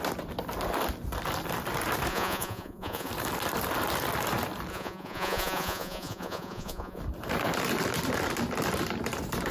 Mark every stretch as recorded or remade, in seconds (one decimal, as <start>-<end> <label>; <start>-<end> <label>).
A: 0.0-2.1 recorded; 2.1-3.1 remade; 3.1-4.7 recorded; 4.7-7.0 remade; 7.0-9.5 recorded